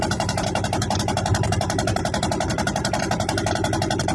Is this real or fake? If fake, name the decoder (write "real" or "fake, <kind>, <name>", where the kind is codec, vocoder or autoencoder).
fake, vocoder, BigVGAN v2